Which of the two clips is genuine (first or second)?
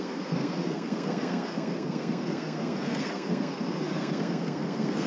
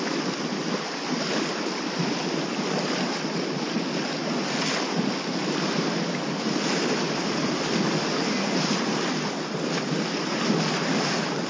second